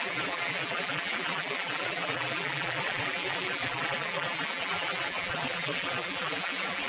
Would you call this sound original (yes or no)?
no